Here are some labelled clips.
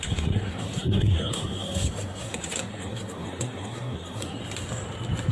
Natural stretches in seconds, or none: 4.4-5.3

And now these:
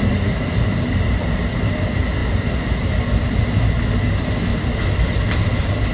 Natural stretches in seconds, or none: 0.0-5.9

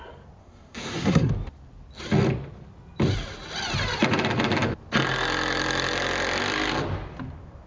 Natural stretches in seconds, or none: 0.0-0.4; 1.3-7.7